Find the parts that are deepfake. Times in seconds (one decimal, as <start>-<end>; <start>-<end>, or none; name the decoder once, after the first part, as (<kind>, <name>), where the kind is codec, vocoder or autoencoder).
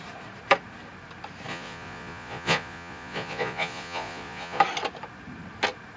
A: 1.5-4.6 (vocoder, Vocos)